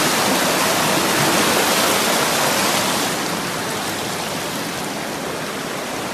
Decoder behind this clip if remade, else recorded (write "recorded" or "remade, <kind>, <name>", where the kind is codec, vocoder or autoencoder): recorded